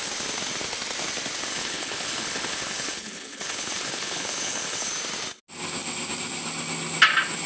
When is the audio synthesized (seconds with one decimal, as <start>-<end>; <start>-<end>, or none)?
1.5-4.9